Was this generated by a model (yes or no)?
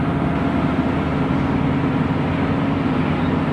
no